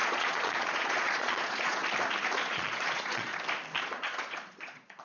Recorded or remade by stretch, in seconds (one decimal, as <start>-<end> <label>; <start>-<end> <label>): 0.0-1.8 remade; 1.8-2.4 recorded; 2.4-3.3 remade; 3.3-3.8 recorded; 3.8-5.0 remade